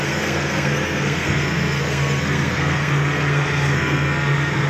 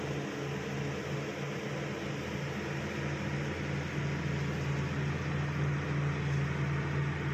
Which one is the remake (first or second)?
first